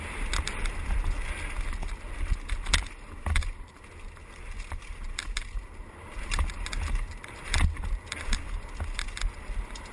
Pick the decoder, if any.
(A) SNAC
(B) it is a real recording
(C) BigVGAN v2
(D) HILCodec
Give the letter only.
B